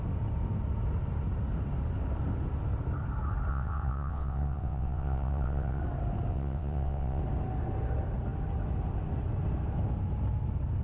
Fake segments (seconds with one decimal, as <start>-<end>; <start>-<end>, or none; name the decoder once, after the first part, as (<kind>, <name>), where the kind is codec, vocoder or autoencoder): 3.5-5.8 (vocoder, WaveNeXt); 6.3-7.2